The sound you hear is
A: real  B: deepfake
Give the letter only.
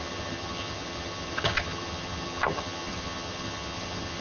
B